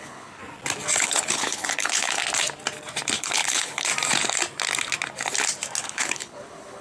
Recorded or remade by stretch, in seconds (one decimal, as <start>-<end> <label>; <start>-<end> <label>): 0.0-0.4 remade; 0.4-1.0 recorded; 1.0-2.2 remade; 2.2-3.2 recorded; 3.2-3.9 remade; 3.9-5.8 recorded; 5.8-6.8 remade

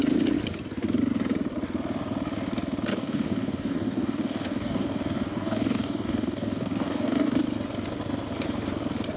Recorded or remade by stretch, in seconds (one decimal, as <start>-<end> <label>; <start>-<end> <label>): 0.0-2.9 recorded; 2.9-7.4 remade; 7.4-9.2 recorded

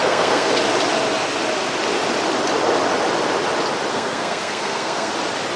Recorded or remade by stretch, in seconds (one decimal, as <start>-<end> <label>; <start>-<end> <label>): 0.0-0.5 remade; 0.5-3.9 recorded; 3.9-5.1 remade; 5.1-5.6 recorded

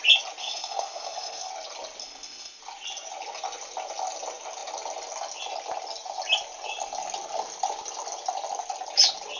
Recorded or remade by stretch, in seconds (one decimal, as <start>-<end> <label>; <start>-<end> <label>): 0.0-0.4 recorded; 0.4-1.5 remade; 1.5-2.0 recorded; 2.0-2.6 remade; 2.6-9.4 recorded

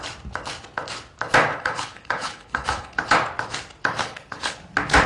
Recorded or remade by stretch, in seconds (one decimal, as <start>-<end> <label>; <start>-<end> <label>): 0.0-1.5 recorded; 1.5-3.0 remade; 3.0-4.0 recorded; 4.0-4.6 remade; 4.6-5.1 recorded

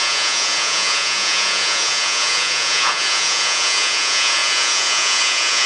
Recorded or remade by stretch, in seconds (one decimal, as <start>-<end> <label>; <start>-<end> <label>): 0.0-5.7 remade